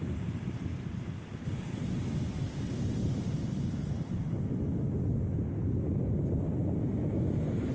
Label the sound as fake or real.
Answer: real